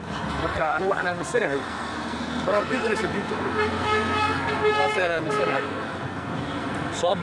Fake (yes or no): yes